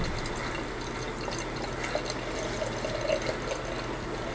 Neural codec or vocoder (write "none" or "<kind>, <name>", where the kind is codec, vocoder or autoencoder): none